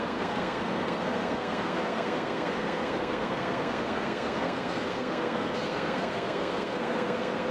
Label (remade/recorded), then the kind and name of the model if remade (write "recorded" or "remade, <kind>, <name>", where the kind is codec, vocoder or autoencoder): remade, codec, SNAC